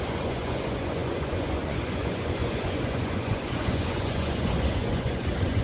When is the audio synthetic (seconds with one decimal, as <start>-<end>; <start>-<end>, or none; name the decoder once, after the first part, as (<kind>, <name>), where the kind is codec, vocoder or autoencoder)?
0.0-5.6 (vocoder, Vocos)